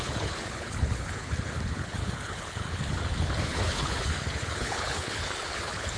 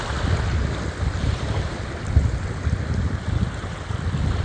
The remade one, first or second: first